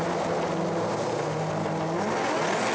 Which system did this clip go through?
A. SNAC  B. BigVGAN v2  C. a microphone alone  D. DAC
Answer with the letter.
C